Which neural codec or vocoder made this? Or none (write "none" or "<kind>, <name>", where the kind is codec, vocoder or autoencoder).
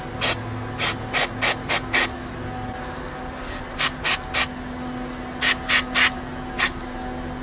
none